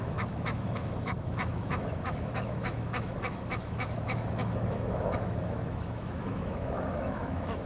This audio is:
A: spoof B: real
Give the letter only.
A